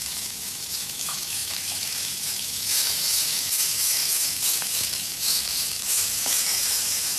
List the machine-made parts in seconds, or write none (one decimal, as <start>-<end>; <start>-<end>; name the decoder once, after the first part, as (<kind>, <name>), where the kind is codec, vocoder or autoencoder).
0.0-7.2 (autoencoder, DAC-VAE)